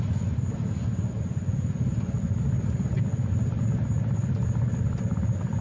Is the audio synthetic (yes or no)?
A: no